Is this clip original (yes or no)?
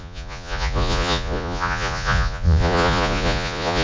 no